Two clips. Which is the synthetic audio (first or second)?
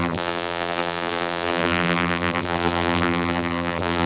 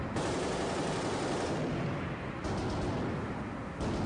first